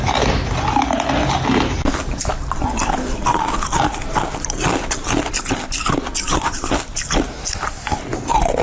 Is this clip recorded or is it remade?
recorded